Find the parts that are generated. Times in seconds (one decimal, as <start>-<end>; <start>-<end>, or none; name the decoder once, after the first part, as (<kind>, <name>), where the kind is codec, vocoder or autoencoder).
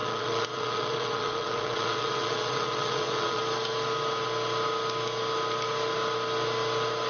0.0-3.4 (vocoder, WaveNeXt)